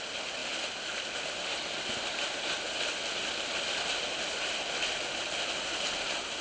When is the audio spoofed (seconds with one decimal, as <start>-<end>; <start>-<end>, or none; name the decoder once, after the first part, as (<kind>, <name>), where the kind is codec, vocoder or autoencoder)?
none